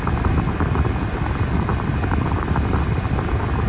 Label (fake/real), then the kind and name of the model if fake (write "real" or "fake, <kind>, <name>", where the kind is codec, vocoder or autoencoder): real